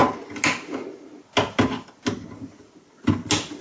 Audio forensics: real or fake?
real